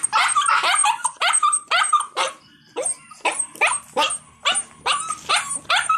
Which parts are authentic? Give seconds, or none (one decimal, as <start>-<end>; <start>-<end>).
0.0-0.8; 3.4-6.0